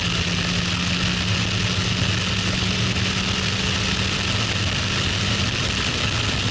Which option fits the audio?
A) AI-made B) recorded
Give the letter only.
B